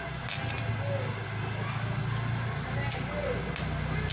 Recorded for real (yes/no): yes